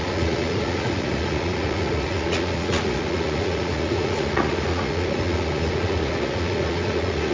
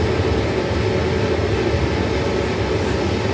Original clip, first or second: second